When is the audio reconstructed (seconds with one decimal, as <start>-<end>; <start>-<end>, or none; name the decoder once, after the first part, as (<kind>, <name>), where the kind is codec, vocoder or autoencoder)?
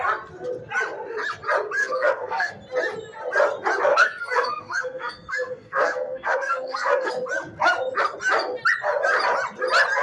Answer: 1.8-2.5 (codec, SNAC); 3.9-7.1